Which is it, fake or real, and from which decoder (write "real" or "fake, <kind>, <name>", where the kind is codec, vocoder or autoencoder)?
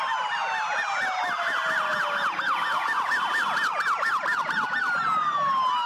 real